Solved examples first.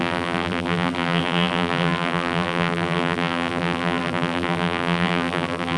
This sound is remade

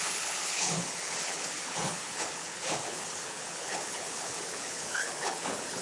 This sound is remade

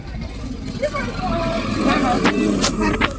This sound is recorded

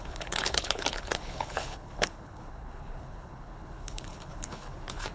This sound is remade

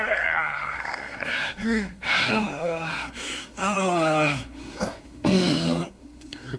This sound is remade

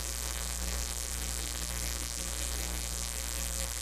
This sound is remade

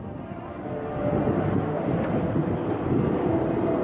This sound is recorded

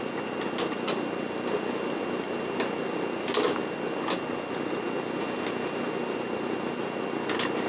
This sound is recorded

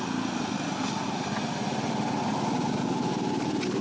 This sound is recorded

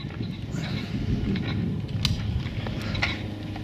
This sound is recorded